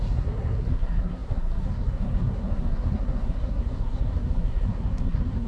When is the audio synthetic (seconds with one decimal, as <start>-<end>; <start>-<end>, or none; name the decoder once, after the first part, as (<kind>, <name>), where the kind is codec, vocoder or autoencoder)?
0.0-5.5 (codec, SNAC)